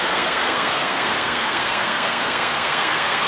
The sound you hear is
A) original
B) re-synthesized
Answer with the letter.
B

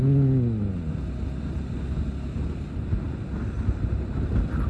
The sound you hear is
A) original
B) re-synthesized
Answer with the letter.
A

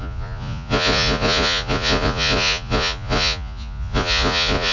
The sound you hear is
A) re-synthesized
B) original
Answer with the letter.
A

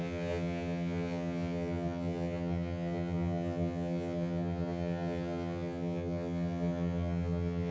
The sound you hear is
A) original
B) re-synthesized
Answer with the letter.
B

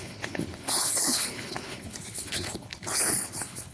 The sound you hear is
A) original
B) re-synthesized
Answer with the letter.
B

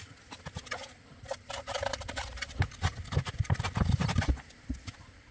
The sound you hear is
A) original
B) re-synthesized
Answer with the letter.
A